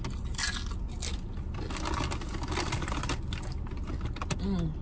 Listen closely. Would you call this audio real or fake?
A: real